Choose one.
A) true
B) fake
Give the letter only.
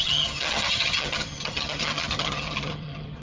B